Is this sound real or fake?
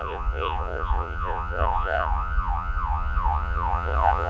fake